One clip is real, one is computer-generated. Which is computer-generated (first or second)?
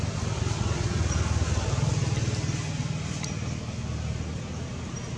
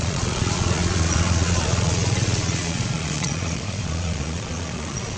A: second